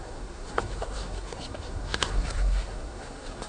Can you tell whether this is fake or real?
fake